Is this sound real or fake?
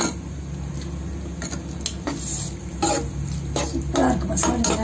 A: real